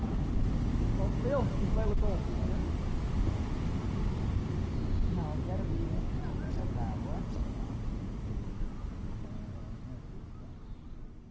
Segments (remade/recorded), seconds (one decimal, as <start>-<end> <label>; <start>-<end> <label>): 0.0-7.2 recorded; 7.2-8.9 remade; 8.9-11.3 recorded